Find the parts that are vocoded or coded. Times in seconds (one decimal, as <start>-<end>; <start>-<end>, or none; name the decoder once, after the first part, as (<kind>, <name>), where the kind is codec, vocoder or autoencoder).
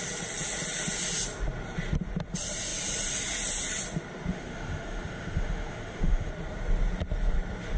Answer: 4.3-6.3 (autoencoder, DAC-VAE)